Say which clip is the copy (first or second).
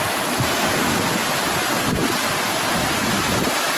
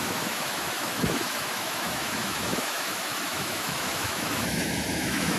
second